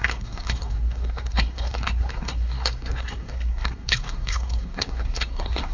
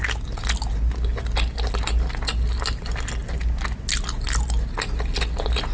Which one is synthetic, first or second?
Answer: first